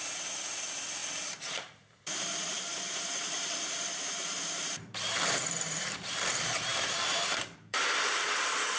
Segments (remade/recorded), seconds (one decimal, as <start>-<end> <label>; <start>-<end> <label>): 0.0-1.0 recorded; 1.0-6.1 remade; 6.1-6.7 recorded; 6.7-7.9 remade; 7.9-8.8 recorded